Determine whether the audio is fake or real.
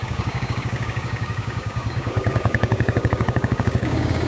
fake